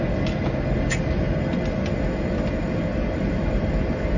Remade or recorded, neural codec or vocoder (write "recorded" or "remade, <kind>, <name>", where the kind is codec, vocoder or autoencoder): recorded